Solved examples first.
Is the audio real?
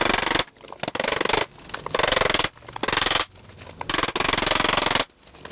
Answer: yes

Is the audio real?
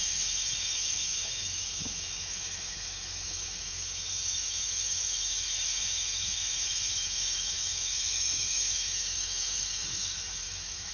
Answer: no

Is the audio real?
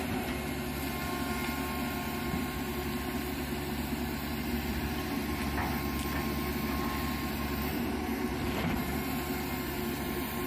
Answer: yes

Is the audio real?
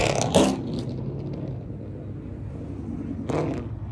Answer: yes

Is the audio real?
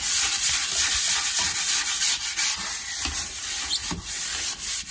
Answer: no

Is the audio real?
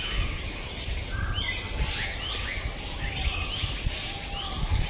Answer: yes